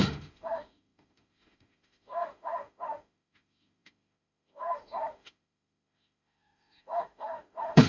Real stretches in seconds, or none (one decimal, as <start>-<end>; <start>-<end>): none